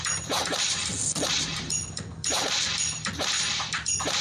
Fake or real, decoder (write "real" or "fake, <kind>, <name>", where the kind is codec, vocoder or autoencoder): real